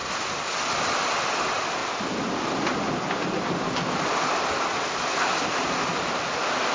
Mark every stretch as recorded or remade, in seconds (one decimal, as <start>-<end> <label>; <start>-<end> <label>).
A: 0.0-6.7 recorded